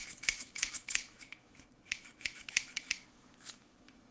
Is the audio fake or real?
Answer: fake